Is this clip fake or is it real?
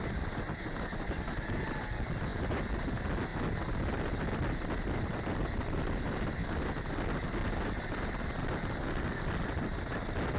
real